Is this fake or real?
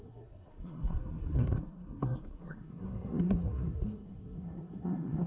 fake